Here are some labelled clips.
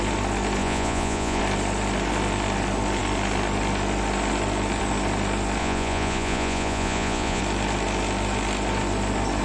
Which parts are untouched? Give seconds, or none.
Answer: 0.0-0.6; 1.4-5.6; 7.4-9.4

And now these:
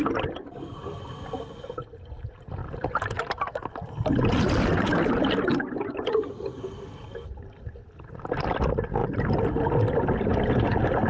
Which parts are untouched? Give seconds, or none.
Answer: 0.0-2.6; 3.7-9.0; 9.5-11.1